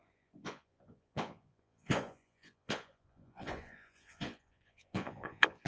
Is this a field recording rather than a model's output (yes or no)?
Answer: no